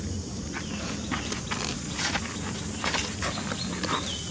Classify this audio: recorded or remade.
recorded